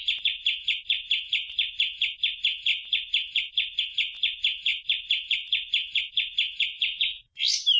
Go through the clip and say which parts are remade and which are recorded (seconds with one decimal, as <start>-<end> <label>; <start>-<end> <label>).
0.0-7.8 recorded